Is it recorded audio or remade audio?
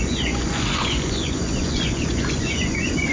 remade